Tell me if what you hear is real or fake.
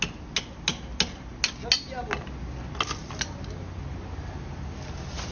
real